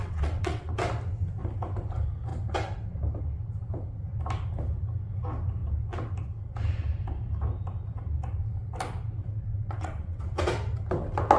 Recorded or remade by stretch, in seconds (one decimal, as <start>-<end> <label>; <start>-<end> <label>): 0.0-0.7 remade; 0.7-9.2 recorded; 9.2-10.2 remade; 10.2-11.4 recorded

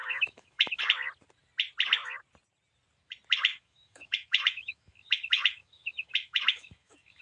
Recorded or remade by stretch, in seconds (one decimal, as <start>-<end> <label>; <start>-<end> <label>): 0.0-0.8 remade; 0.8-3.5 recorded; 3.5-7.2 remade

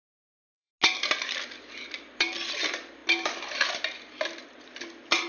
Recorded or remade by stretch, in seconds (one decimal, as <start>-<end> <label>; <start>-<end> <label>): 0.0-0.7 remade; 0.7-1.2 recorded; 1.2-3.0 remade; 3.0-4.5 recorded; 4.5-5.3 remade

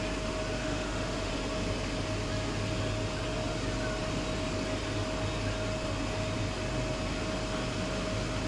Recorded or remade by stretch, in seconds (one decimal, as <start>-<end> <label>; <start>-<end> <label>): 0.0-0.6 recorded; 0.6-1.3 remade; 1.3-8.5 recorded